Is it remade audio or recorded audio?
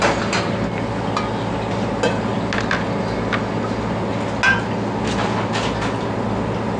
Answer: recorded